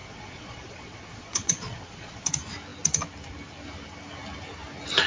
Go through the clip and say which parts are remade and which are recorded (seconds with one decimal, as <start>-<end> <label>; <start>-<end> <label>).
0.0-2.3 remade; 2.3-5.1 recorded